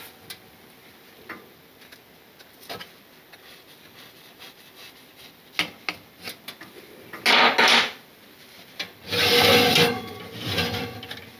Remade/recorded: recorded